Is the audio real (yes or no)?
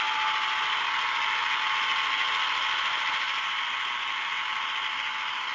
yes